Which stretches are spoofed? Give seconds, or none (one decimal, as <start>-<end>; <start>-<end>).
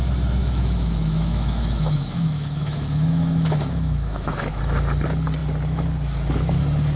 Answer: 0.4-4.6